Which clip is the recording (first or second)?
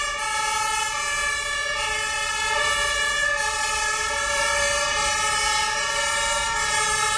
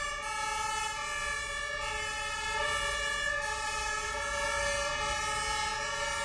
second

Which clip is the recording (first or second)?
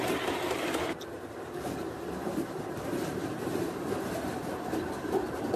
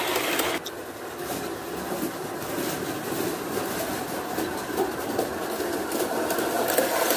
second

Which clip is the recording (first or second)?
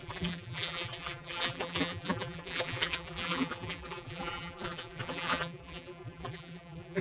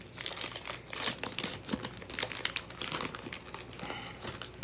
second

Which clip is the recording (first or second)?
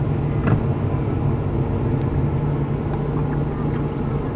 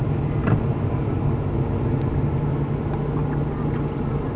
first